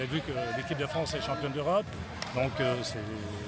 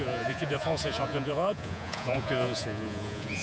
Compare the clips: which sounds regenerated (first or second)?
second